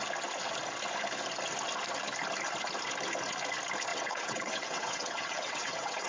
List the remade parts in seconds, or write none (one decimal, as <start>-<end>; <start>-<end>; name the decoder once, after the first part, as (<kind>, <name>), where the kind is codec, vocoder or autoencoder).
3.9-6.1 (vocoder, WaveNeXt)